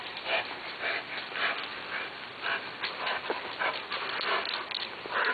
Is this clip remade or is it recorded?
recorded